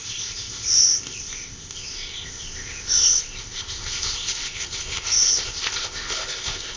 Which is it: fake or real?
fake